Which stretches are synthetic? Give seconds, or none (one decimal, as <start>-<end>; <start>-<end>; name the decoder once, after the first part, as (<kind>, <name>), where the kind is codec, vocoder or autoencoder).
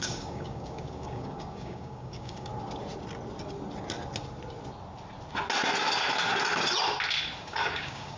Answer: 0.0-2.5 (codec, DAC); 7.4-8.2